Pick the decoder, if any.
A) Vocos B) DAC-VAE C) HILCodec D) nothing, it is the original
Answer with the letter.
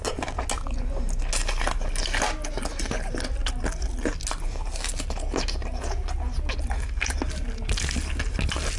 D